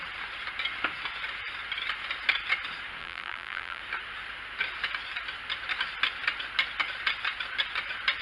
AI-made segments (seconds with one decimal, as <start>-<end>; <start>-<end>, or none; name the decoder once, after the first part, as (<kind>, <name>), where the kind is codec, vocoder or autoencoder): 3.0-3.8 (vocoder, BigVGAN v2)